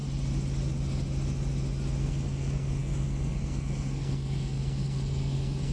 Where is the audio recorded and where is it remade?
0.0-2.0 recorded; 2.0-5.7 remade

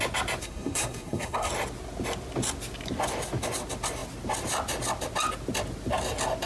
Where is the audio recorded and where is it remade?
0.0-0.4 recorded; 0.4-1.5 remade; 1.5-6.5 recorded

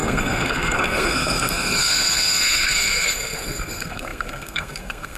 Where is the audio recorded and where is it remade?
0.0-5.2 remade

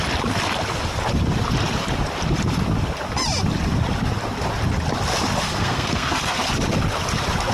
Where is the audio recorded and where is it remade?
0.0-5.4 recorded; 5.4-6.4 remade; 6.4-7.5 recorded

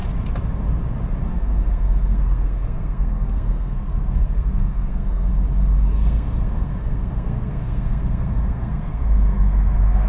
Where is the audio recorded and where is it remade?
0.0-1.3 recorded; 1.3-5.3 remade; 5.3-5.9 recorded; 5.9-10.1 remade

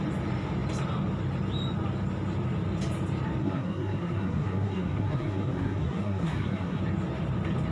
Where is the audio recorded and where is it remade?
0.0-3.4 recorded; 3.4-6.8 remade; 6.8-7.7 recorded

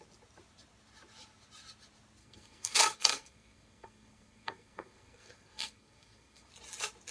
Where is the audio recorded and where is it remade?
0.0-2.2 recorded; 2.2-6.5 remade; 6.5-7.1 recorded